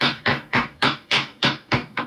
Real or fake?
fake